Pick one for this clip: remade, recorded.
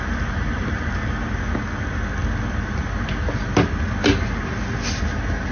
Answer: recorded